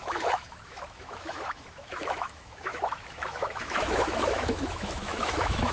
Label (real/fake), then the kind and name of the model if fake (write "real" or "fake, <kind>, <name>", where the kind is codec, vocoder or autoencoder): fake, autoencoder, DAC-VAE